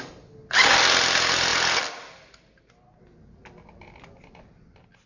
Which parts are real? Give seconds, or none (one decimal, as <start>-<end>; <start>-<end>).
0.0-5.1